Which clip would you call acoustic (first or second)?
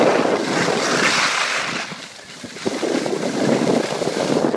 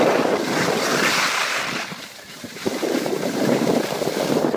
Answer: first